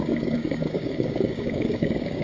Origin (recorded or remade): remade